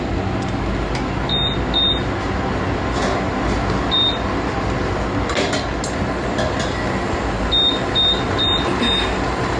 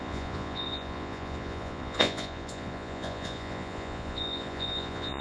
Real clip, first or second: first